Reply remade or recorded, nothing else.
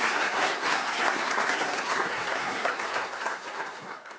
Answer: remade